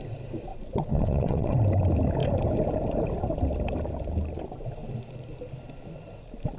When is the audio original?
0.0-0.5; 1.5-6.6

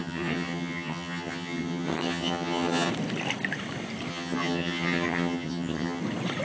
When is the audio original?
2.9-4.1; 6.0-6.4

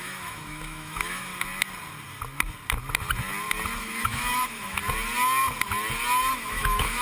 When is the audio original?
1.3-3.8; 4.8-6.3